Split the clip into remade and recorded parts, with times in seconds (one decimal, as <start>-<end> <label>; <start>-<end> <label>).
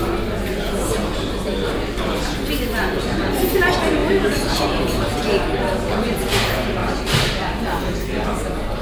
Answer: 0.0-4.0 recorded; 4.0-5.0 remade; 5.0-6.8 recorded; 6.8-8.2 remade; 8.2-8.8 recorded